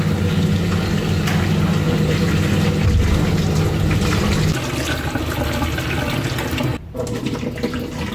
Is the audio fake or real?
fake